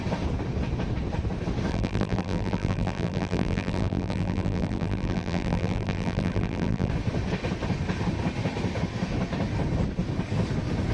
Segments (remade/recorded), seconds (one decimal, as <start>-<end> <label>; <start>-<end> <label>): 0.0-1.7 recorded; 1.7-6.9 remade; 6.9-10.9 recorded